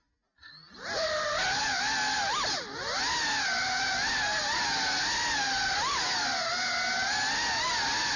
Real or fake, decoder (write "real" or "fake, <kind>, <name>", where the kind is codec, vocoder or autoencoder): real